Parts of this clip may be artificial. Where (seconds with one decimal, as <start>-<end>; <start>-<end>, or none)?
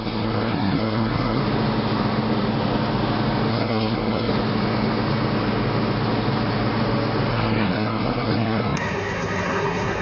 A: 0.0-1.4; 3.5-4.3; 7.3-10.0